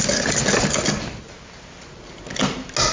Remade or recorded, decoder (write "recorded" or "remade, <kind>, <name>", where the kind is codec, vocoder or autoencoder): recorded